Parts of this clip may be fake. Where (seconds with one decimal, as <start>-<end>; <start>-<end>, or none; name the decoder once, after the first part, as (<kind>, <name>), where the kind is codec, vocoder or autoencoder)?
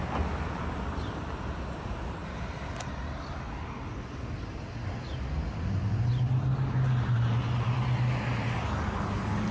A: none